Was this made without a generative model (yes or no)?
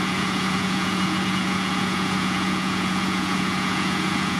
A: no